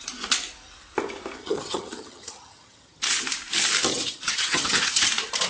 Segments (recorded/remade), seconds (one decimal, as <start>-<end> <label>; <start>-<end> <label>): 0.0-1.4 recorded; 1.4-3.0 remade; 3.0-3.9 recorded; 3.9-5.1 remade; 5.1-5.5 recorded